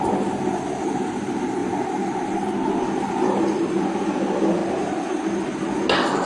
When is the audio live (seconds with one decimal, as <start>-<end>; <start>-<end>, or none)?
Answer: 0.0-6.3